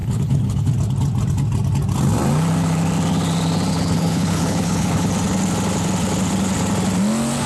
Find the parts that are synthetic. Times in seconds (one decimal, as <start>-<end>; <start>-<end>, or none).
0.0-0.7; 3.7-5.1

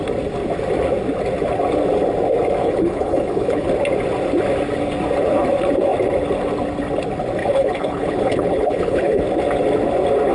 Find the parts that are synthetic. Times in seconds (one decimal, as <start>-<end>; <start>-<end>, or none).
2.6-3.7; 7.4-9.2

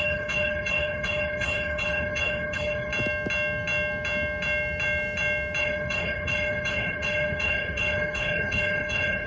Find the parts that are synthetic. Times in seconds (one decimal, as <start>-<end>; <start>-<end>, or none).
0.0-2.9; 5.6-9.3